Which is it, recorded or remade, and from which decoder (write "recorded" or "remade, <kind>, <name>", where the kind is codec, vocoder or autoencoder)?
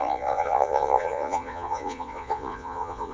remade, vocoder, Vocos